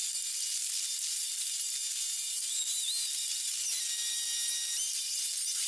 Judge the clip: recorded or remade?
recorded